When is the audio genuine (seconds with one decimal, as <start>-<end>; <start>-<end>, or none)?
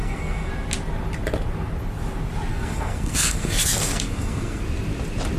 0.5-2.5; 4.6-5.4